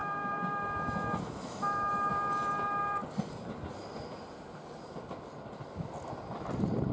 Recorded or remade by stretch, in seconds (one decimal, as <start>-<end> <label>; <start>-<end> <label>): 0.0-2.1 remade; 2.1-6.9 recorded